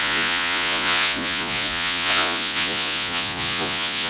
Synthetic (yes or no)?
yes